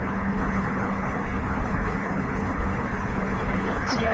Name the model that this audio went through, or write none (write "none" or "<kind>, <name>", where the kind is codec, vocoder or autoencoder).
codec, HILCodec